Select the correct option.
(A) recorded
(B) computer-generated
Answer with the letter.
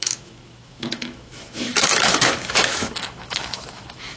B